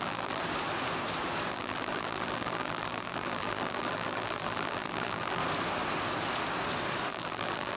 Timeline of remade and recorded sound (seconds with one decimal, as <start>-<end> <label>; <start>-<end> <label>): 0.0-0.4 remade; 0.4-1.5 recorded; 1.5-5.4 remade; 5.4-7.1 recorded; 7.1-7.8 remade